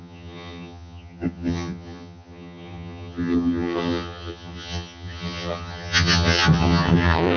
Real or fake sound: fake